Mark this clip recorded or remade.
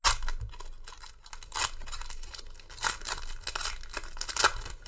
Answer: recorded